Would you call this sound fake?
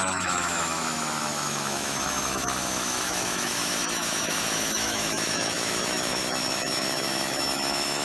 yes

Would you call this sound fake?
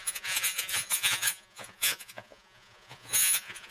yes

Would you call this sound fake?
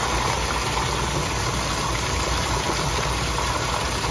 no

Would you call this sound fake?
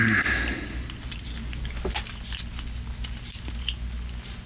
no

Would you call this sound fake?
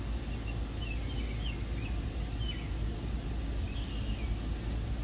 no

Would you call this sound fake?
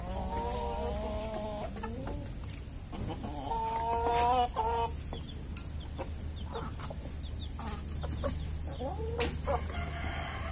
no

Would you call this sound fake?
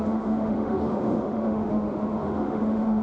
yes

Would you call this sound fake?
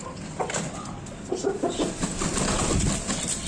no